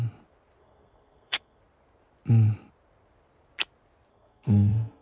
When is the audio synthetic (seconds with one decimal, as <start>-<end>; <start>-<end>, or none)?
0.6-1.6; 4.1-5.0